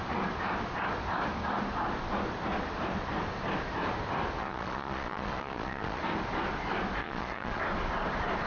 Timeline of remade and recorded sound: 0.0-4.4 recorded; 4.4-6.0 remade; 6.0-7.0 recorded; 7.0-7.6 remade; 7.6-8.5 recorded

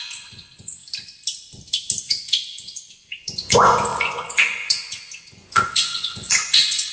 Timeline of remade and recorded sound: 0.0-0.8 remade; 0.8-2.0 recorded; 2.0-6.9 remade